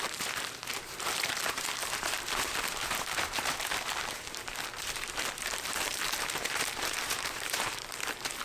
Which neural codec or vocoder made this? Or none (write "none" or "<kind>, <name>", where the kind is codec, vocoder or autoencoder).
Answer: vocoder, BigVGAN v2